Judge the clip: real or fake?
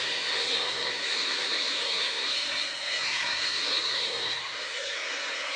fake